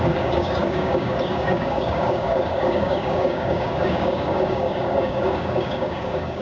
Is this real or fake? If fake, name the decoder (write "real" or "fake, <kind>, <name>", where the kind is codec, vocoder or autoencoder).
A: fake, codec, DAC